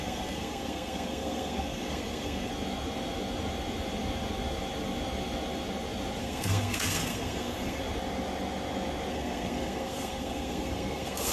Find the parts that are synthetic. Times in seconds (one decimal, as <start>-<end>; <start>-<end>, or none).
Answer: 0.0-2.5; 6.2-7.8; 9.1-11.3